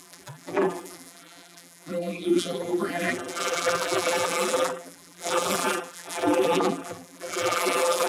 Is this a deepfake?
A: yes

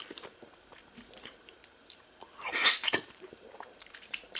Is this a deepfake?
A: yes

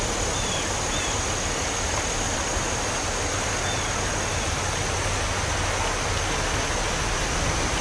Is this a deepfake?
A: no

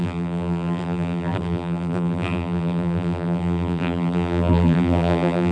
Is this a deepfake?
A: yes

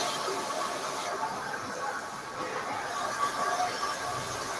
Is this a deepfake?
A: no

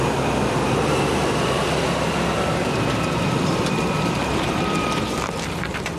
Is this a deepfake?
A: yes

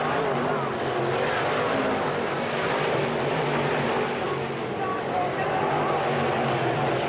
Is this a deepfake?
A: no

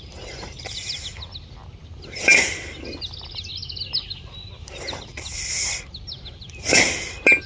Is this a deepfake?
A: no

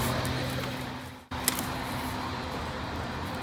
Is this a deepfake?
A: no